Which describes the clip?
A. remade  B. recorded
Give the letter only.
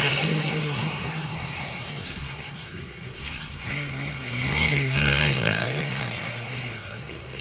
A